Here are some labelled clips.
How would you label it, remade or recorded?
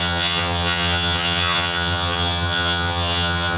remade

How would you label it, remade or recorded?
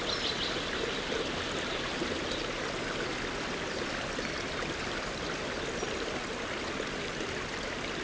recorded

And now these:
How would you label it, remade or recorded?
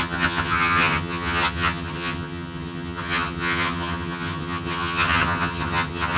remade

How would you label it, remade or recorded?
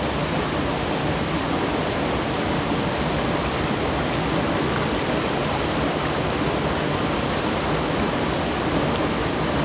recorded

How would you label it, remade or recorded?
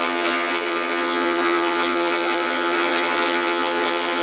remade